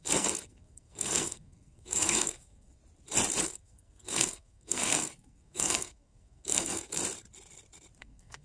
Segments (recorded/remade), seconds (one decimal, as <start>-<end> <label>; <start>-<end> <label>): 0.0-2.8 remade; 2.8-3.4 recorded; 3.4-7.0 remade; 7.0-8.0 recorded; 8.0-8.4 remade